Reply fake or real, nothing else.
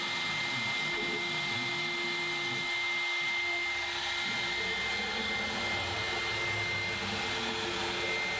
real